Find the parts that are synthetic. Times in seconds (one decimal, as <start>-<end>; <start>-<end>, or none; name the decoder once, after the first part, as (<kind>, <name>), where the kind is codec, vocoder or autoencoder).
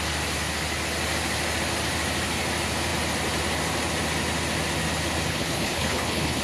5.3-6.4 (codec, HILCodec)